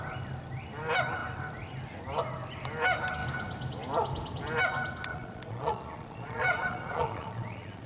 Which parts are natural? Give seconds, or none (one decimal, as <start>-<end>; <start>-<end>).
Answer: 0.0-5.1